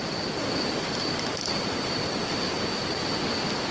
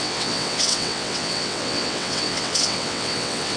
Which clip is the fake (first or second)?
second